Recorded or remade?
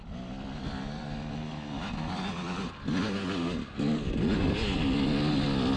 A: recorded